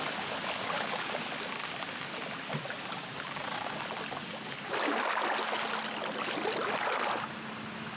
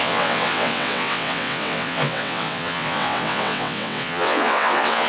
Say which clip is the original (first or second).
first